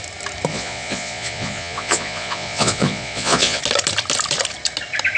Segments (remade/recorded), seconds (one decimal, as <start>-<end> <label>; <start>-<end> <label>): 0.0-0.5 recorded; 0.5-3.6 remade; 3.6-5.2 recorded

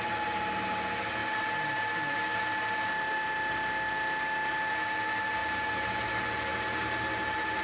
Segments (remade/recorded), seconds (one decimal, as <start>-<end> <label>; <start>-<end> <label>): 0.0-2.9 recorded; 2.9-4.7 remade; 4.7-7.6 recorded

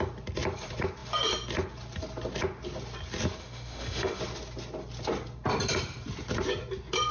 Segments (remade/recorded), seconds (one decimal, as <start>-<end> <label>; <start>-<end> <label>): 0.0-3.4 recorded; 3.4-4.2 remade; 4.2-7.1 recorded

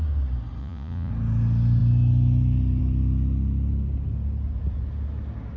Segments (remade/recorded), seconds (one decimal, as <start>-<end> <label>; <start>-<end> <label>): 0.0-0.6 recorded; 0.6-1.1 remade; 1.1-5.6 recorded

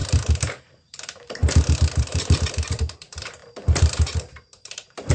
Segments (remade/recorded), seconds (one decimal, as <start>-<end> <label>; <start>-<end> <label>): 0.0-0.6 recorded; 0.6-1.4 remade; 1.4-2.0 recorded; 2.0-5.1 remade

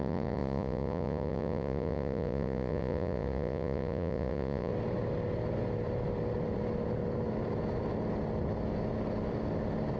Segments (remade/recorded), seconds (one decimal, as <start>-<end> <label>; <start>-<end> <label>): 0.0-4.7 remade; 4.7-10.0 recorded

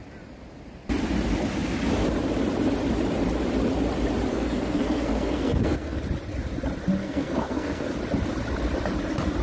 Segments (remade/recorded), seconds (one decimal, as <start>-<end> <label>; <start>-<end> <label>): 0.0-4.3 recorded; 4.3-6.0 remade; 6.0-7.0 recorded; 7.0-7.9 remade; 7.9-9.4 recorded

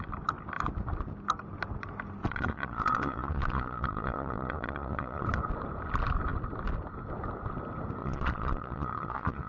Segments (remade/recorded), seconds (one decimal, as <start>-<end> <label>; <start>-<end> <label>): 0.0-2.2 recorded; 2.2-5.4 remade; 5.4-8.0 recorded; 8.0-9.5 remade